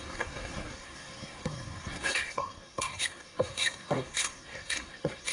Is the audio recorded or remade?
remade